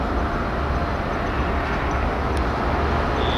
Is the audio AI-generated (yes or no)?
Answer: no